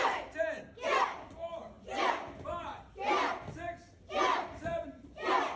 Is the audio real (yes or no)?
yes